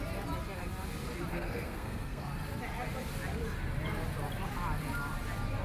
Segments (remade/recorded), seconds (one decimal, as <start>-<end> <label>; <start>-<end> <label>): 0.0-1.3 recorded; 1.3-2.3 remade; 2.3-5.6 recorded